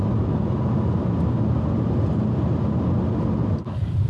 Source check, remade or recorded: recorded